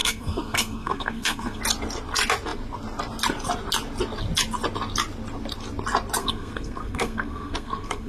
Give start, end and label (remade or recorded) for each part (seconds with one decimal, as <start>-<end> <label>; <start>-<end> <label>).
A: 0.0-1.6 remade; 1.6-6.2 recorded; 6.2-8.1 remade

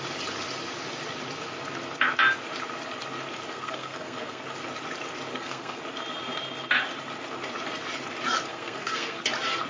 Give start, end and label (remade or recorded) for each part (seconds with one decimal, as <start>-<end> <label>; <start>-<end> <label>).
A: 0.0-3.5 recorded; 3.5-4.4 remade; 4.4-5.3 recorded; 5.3-5.8 remade; 5.8-8.5 recorded; 8.5-9.2 remade; 9.2-9.7 recorded

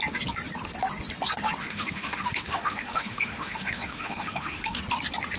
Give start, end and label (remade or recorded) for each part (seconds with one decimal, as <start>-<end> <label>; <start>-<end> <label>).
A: 0.0-1.6 recorded; 1.6-4.8 remade; 4.8-5.4 recorded

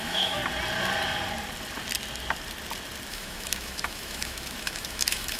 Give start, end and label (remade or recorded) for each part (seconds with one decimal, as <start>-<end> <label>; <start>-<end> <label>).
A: 0.0-0.4 remade; 0.4-3.1 recorded; 3.1-5.4 remade

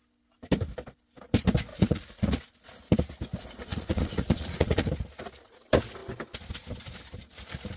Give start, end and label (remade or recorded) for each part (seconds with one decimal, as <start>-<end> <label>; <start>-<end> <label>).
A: 0.0-1.7 recorded; 1.7-2.4 remade; 2.4-3.7 recorded; 3.7-4.9 remade; 4.9-7.8 recorded

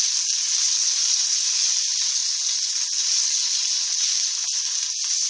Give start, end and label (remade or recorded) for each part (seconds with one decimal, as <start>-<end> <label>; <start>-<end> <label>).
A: 0.0-5.3 recorded

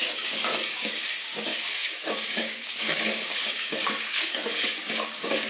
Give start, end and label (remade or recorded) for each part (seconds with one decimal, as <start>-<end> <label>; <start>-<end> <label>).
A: 0.0-5.5 remade